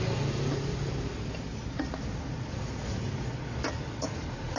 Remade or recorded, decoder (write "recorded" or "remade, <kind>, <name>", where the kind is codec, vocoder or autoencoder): recorded